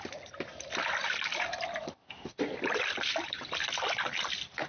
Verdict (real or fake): real